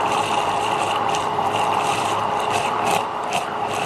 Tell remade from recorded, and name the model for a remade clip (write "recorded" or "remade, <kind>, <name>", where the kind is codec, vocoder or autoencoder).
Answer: remade, vocoder, BigVGAN v2